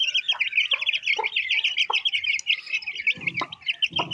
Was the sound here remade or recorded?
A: recorded